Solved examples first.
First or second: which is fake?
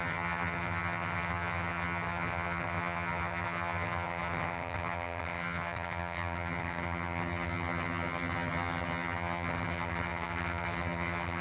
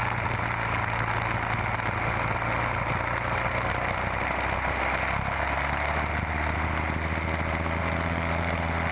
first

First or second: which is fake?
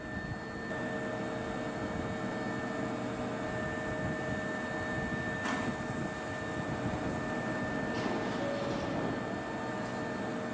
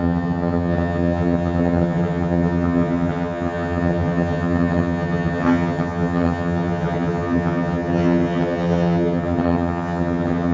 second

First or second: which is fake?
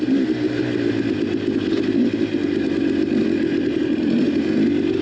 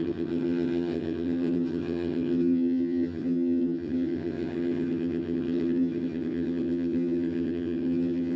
second